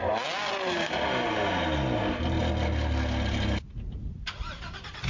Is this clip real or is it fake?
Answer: real